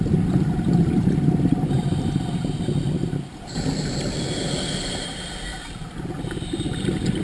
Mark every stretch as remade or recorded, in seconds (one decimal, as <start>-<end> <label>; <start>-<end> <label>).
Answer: 0.0-7.2 recorded